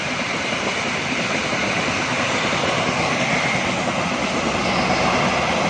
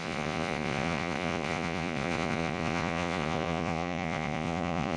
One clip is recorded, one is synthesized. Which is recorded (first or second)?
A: first